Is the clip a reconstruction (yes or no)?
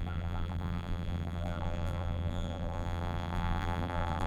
yes